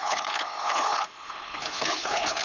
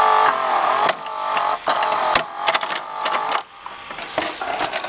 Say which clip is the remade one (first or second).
first